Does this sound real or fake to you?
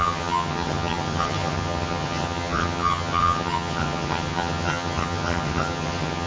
fake